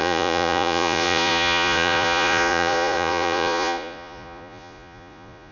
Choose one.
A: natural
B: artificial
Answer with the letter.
B